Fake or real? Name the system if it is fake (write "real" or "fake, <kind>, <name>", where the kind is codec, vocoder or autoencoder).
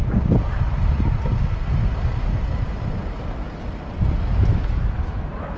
real